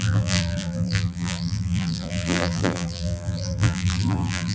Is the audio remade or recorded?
remade